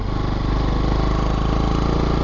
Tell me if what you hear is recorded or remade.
recorded